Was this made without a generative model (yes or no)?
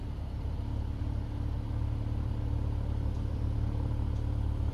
no